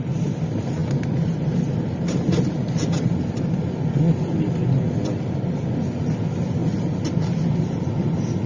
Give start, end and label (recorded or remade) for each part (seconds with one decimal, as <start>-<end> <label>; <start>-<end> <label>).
0.0-8.5 recorded